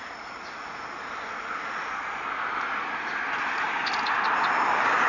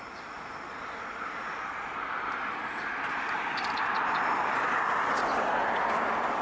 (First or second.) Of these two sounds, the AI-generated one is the second